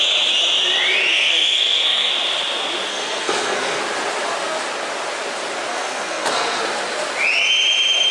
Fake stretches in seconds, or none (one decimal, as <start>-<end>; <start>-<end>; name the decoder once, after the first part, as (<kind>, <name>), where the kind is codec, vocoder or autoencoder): 1.1-2.1 (codec, SNAC); 2.9-3.8; 5.7-6.6